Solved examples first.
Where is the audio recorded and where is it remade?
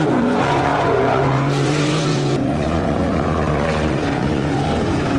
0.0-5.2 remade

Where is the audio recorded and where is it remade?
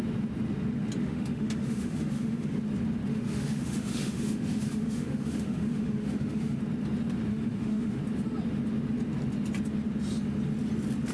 0.0-1.0 recorded; 1.0-2.6 remade; 2.6-3.1 recorded; 3.1-6.6 remade; 6.6-7.3 recorded; 7.3-8.0 remade; 8.0-11.1 recorded